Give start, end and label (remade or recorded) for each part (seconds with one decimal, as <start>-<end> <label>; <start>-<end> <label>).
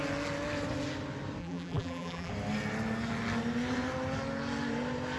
0.0-1.4 recorded; 1.4-2.3 remade; 2.3-5.2 recorded